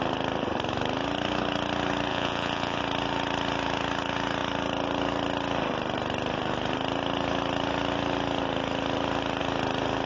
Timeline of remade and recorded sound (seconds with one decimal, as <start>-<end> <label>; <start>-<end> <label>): 0.0-2.1 recorded; 2.1-2.8 remade; 2.8-10.1 recorded